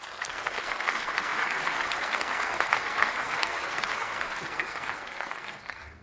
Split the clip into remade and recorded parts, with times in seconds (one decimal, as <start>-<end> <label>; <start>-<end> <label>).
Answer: 0.0-6.0 remade